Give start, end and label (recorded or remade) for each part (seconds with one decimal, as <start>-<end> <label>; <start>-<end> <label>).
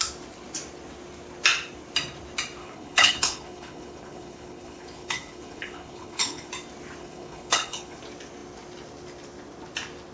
0.0-2.6 recorded; 2.6-6.5 remade; 6.5-7.0 recorded; 7.0-8.0 remade; 8.0-10.1 recorded